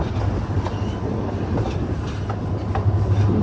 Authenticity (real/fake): real